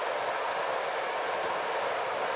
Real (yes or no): yes